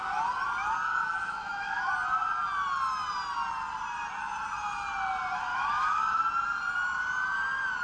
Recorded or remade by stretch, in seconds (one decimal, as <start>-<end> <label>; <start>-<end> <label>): 0.0-0.9 recorded; 0.9-1.9 remade; 1.9-5.5 recorded; 5.5-6.2 remade; 6.2-7.8 recorded